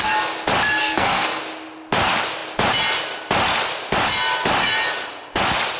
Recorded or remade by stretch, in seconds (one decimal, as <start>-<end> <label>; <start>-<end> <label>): 0.0-0.8 recorded; 0.8-1.4 remade; 1.4-5.8 recorded